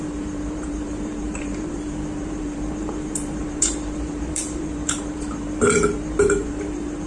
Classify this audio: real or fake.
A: fake